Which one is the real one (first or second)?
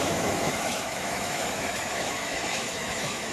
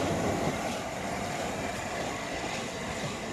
second